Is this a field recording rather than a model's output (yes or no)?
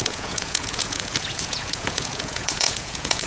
no